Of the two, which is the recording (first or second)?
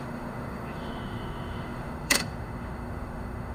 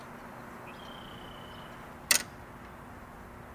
second